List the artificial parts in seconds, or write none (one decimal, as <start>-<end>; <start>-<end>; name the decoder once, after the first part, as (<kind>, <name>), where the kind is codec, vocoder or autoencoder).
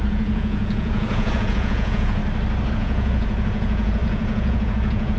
0.0-2.2 (vocoder, Vocos); 2.7-5.2